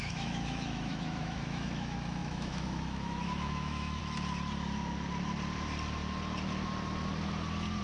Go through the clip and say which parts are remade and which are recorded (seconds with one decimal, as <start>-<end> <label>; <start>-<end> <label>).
0.0-4.0 remade; 4.0-7.8 recorded